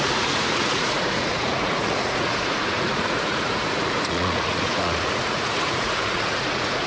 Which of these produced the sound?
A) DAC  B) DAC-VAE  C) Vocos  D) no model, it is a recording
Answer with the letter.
C